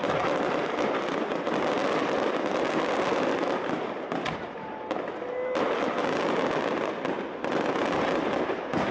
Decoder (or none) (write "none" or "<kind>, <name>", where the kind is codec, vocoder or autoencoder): none